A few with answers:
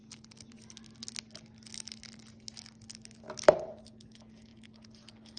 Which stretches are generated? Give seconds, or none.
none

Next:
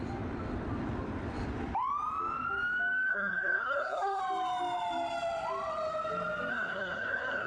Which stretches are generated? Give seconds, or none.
3.1-4.2 (codec, SNAC); 6.5-7.5

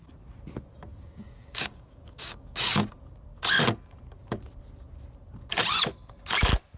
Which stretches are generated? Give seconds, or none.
0.9-2.9 (codec, DAC)

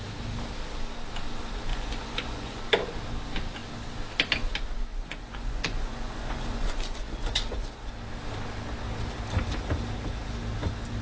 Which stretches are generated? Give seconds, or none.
1.7-2.6 (vocoder, Vocos); 4.9-7.9

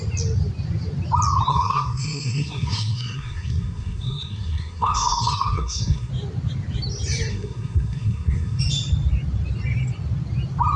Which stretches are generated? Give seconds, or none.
1.5-6.1 (codec, SNAC); 7.3-8.6

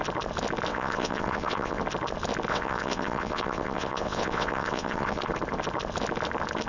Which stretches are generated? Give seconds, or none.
0.7-1.8 (vocoder, WaveNeXt); 2.5-5.2

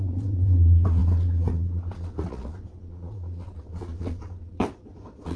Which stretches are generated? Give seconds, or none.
0.0-5.4 (vocoder, Vocos)

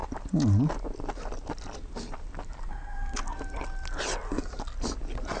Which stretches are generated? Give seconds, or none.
2.7-3.2 (codec, SNAC)